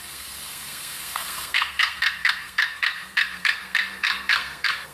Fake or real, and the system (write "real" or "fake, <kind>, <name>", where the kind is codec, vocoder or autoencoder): fake, codec, SNAC